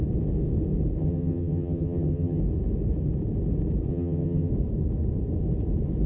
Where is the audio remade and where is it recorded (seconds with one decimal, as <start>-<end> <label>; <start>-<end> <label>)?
0.0-1.0 recorded; 1.0-2.4 remade; 2.4-3.9 recorded; 3.9-4.5 remade; 4.5-6.1 recorded